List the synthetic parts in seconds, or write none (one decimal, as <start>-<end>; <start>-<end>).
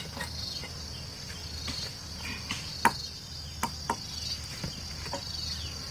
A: none